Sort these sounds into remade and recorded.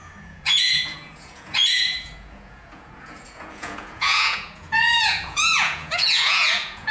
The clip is remade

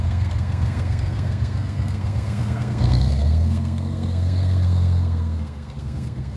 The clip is remade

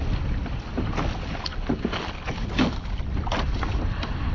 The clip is recorded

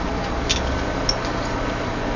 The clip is recorded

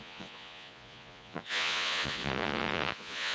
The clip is remade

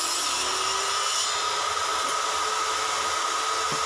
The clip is recorded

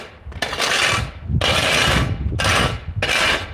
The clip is recorded